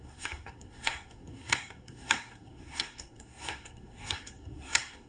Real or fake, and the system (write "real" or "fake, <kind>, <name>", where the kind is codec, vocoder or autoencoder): fake, codec, SNAC